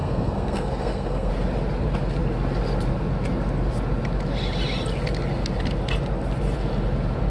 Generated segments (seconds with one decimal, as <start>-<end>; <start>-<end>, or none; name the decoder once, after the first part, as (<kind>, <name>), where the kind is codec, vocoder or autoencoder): 0.0-1.3 (codec, SNAC)